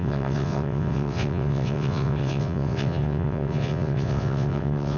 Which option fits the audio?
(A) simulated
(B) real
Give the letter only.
A